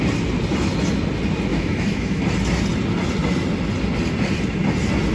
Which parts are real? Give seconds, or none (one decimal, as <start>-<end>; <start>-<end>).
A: 0.0-1.5; 2.2-5.1

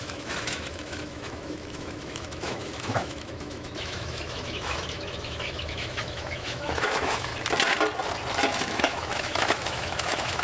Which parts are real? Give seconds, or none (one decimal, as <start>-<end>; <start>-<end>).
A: 7.3-8.5

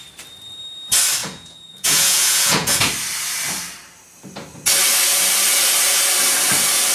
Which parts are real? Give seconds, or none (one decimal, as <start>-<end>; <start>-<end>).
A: 0.0-1.2; 2.9-6.9

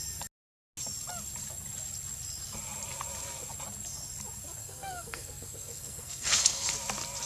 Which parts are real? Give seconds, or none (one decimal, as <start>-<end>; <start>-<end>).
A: 0.0-4.6; 6.7-7.3

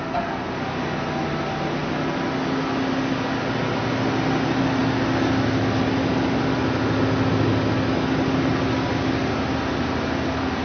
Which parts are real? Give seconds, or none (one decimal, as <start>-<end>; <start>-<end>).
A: 0.0-10.6